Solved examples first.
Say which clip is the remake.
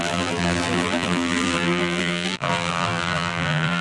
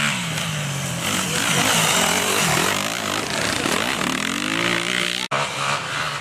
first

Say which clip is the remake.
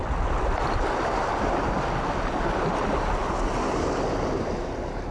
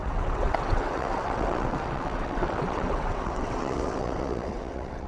second